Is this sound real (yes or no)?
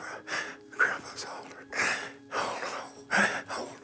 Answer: yes